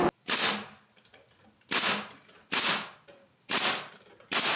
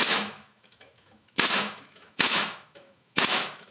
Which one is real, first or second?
first